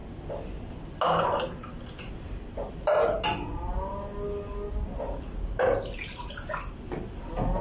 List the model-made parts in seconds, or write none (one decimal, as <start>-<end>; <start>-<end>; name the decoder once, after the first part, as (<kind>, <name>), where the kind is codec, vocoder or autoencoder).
none